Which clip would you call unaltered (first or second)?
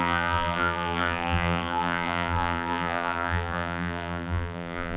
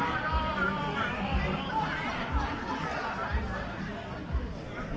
second